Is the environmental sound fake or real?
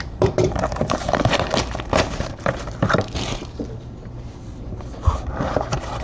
fake